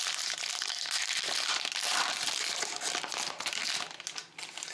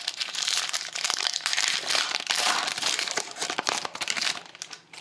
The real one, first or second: first